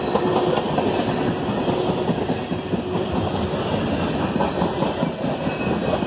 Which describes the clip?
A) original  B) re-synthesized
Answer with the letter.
A